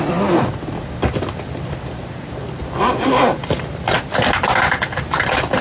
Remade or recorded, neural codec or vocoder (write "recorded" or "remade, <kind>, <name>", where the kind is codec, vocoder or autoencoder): recorded